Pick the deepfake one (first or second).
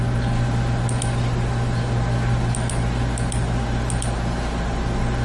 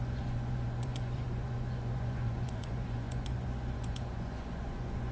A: second